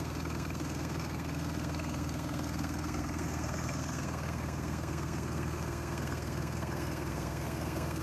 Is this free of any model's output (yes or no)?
no